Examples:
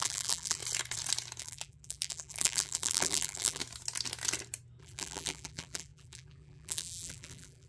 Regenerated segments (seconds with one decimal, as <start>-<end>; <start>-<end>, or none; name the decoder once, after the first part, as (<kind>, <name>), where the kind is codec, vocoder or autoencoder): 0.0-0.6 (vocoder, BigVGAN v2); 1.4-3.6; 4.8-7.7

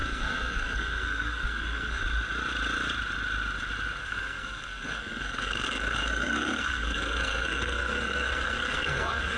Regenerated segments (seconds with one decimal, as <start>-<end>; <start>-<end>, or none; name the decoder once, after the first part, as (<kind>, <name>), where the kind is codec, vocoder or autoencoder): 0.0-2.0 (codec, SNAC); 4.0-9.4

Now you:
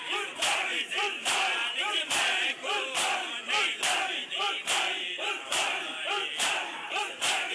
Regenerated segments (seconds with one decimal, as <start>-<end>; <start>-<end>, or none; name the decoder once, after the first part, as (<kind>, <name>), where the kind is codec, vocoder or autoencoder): 0.0-6.2 (vocoder, BigVGAN v2); 7.0-7.5

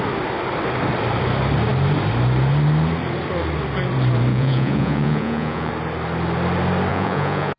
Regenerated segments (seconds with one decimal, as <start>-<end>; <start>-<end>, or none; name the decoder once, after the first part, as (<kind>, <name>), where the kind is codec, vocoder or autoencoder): 4.3-5.7 (vocoder, Vocos); 6.9-7.6